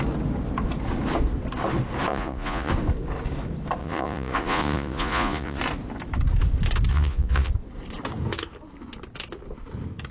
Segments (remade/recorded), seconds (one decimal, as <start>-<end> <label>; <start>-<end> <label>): 0.0-2.1 recorded; 2.1-2.7 remade; 2.7-3.8 recorded; 3.8-5.6 remade; 5.6-6.9 recorded; 6.9-7.5 remade; 7.5-10.1 recorded